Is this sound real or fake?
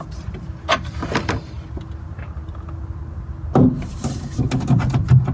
real